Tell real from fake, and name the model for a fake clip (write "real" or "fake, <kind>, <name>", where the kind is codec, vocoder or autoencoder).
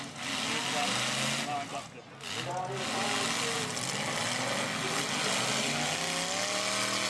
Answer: real